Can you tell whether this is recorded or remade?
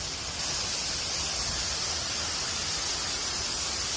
recorded